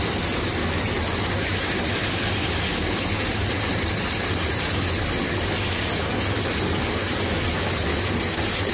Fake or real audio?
real